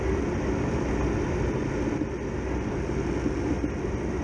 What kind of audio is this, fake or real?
real